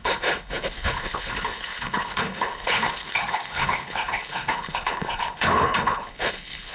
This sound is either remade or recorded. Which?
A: remade